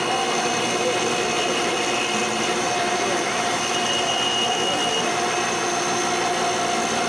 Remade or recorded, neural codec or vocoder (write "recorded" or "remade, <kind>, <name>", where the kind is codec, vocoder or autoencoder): recorded